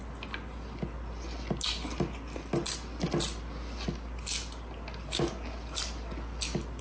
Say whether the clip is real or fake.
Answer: real